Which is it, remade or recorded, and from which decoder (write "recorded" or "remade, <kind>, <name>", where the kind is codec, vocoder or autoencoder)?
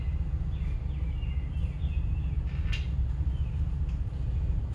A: recorded